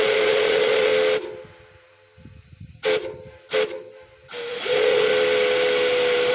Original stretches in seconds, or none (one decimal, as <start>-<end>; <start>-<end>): 0.9-4.5; 5.1-6.3